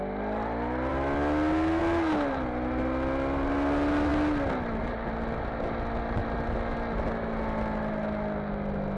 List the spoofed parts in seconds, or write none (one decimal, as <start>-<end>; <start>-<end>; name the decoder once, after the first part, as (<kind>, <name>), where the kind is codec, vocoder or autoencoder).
none